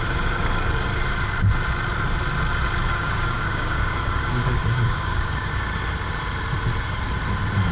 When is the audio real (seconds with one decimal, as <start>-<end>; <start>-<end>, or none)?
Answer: 0.0-2.9; 5.5-7.7

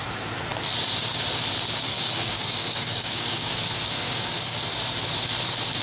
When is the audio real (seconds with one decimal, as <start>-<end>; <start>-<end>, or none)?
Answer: 0.0-1.9; 3.5-4.0; 4.6-5.8

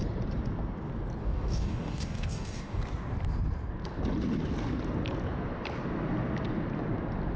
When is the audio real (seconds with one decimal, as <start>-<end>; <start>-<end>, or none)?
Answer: 0.0-1.2; 2.8-7.4

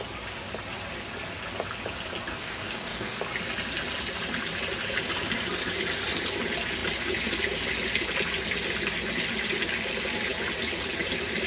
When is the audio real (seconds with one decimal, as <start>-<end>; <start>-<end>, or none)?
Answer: 0.0-2.3; 3.2-11.5

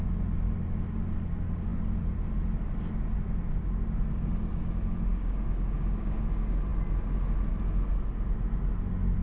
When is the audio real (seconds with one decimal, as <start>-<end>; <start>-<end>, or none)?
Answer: 0.0-5.1; 6.2-9.2

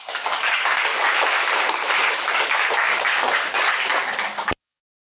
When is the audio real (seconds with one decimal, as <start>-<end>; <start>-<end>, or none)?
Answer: 0.9-2.0

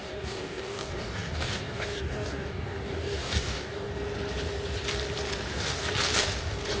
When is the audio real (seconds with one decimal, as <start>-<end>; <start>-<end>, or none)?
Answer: 3.9-6.2

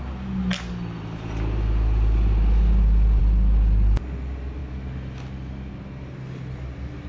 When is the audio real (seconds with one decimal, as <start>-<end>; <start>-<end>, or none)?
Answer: 0.0-7.1